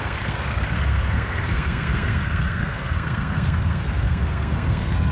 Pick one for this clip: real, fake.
fake